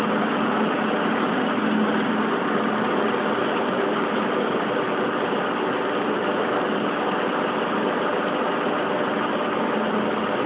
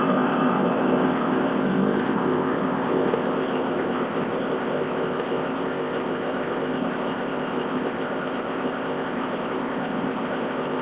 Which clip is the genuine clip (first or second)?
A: first